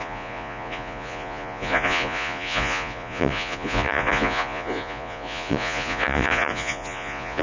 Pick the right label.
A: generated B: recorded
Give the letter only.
A